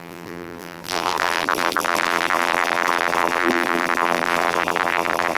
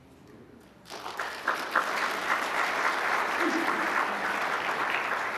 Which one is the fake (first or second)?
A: first